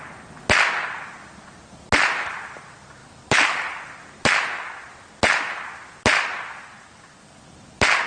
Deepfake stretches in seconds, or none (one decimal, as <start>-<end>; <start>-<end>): none